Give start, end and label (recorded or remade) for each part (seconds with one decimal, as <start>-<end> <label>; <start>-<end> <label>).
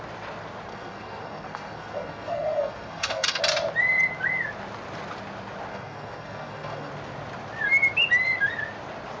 0.0-0.7 recorded; 0.7-3.4 remade; 3.4-5.7 recorded; 5.7-6.9 remade; 6.9-9.2 recorded